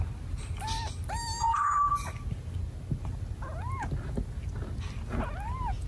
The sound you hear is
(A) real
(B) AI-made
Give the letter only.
A